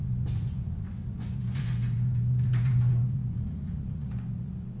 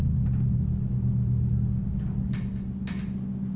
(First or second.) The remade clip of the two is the first